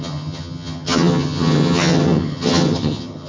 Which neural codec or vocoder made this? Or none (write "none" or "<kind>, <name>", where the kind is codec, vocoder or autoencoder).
vocoder, HiFi-GAN